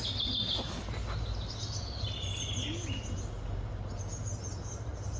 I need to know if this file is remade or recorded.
recorded